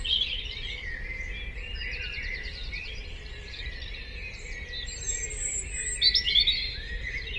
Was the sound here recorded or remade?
recorded